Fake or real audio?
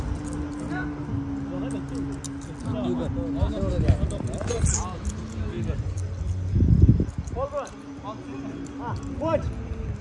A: real